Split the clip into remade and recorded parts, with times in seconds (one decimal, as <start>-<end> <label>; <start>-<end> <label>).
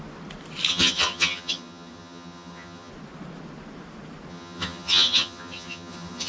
0.0-0.7 recorded; 0.7-2.9 remade; 2.9-4.3 recorded; 4.3-6.3 remade